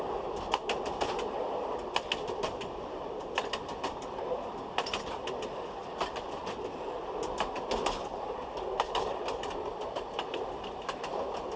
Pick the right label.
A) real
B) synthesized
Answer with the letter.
A